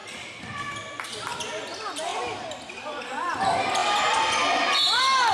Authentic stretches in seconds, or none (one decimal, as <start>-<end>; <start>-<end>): 0.0-5.3